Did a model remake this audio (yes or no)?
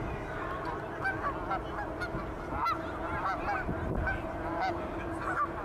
no